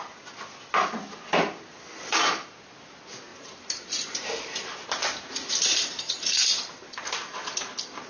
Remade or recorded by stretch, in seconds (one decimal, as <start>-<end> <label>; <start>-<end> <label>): 0.0-3.3 recorded; 3.3-6.1 remade; 6.1-8.1 recorded